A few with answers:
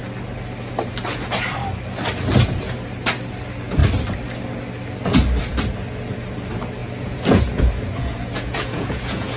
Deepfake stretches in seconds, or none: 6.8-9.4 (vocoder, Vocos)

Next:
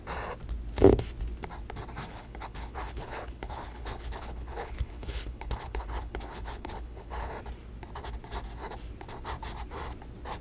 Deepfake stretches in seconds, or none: 2.1-7.3 (codec, HILCodec)